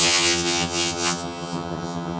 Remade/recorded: remade